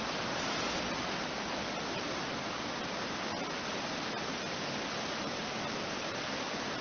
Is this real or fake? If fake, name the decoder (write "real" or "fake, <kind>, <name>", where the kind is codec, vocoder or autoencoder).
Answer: real